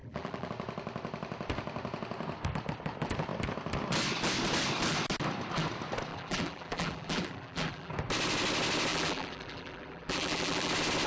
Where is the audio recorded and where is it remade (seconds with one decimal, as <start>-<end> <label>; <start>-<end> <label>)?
0.0-0.5 remade; 0.5-6.1 recorded; 6.1-7.9 remade; 7.9-8.9 recorded; 8.9-10.7 remade; 10.7-11.1 recorded